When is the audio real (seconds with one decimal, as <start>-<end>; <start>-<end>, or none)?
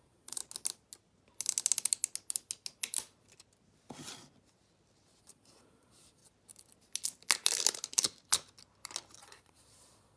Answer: 0.4-5.2; 6.2-9.2